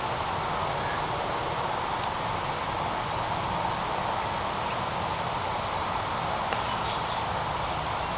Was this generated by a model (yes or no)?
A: no